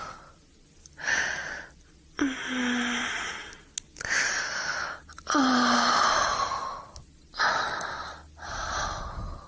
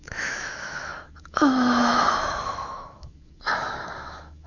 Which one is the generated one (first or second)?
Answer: second